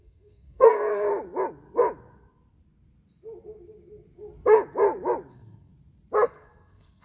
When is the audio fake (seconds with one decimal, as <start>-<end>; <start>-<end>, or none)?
0.0-1.1; 5.3-5.7; 6.3-7.0